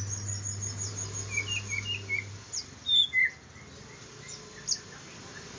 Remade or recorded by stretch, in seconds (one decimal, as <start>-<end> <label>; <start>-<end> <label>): 0.0-5.6 recorded